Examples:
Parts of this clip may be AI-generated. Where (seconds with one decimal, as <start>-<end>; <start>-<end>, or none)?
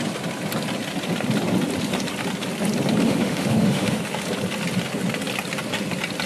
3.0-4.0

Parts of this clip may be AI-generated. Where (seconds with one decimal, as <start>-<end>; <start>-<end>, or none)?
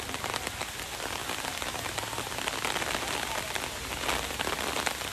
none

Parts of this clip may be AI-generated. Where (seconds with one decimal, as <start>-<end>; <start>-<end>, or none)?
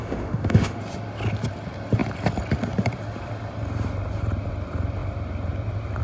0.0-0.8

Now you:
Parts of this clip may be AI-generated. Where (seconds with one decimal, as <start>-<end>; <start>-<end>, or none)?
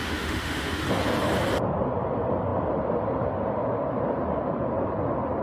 0.0-0.8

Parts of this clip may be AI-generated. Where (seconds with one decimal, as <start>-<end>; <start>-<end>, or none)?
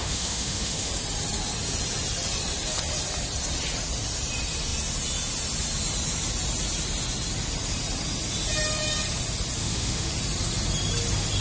0.0-0.9; 9.6-10.1